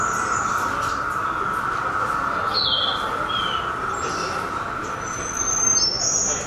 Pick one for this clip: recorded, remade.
recorded